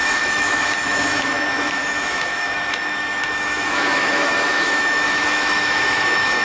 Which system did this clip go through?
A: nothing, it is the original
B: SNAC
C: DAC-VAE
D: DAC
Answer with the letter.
C